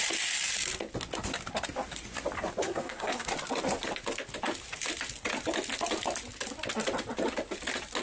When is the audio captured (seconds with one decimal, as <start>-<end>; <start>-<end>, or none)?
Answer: 0.0-2.6; 3.3-8.0